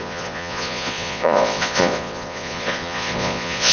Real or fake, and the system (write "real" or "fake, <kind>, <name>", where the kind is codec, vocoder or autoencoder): fake, vocoder, Vocos